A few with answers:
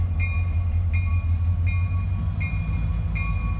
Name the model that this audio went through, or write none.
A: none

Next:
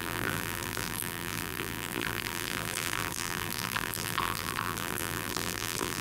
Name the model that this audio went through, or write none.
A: vocoder, BigVGAN v2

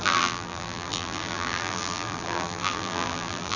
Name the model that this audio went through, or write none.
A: vocoder, BigVGAN v2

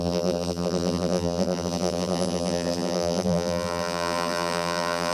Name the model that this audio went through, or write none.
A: vocoder, BigVGAN v2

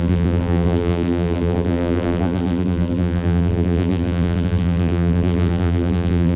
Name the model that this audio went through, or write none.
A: vocoder, BigVGAN v2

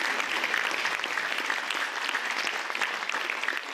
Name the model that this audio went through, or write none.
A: none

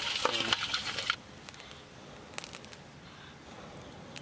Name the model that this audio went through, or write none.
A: none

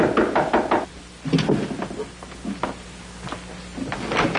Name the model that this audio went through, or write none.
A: none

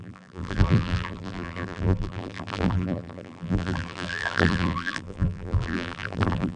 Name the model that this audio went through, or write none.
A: vocoder, BigVGAN v2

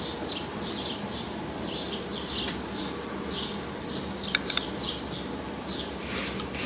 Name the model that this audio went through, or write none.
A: none